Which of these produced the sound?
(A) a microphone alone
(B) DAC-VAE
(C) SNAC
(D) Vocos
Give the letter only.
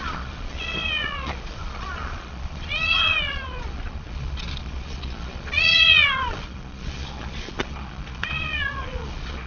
D